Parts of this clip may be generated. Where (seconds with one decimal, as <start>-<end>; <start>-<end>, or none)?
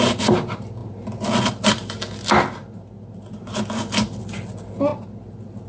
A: none